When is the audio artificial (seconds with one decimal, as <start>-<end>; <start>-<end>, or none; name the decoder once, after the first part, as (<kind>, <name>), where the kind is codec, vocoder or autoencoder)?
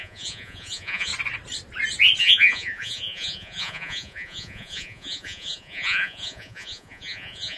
0.0-1.1 (vocoder, Vocos); 2.2-7.6